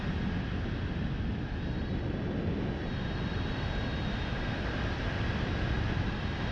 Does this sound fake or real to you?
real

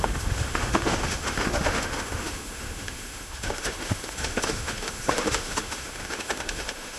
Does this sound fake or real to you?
fake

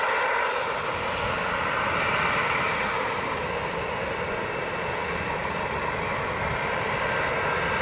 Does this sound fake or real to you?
real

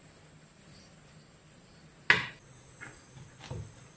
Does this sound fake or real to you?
real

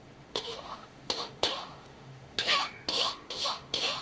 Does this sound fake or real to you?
fake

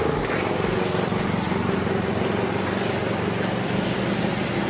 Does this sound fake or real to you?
real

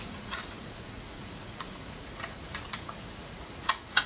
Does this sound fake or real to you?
fake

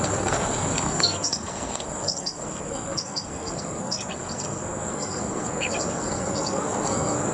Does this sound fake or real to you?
fake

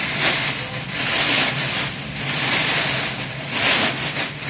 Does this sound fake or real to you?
real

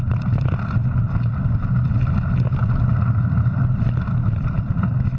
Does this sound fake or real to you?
real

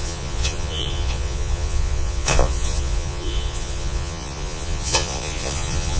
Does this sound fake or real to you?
fake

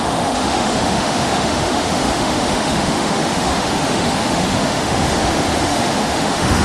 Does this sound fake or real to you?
fake